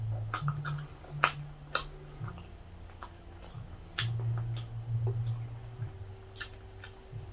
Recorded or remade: recorded